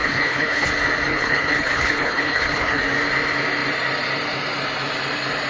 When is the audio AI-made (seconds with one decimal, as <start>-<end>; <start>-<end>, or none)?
0.0-0.7; 1.1-2.8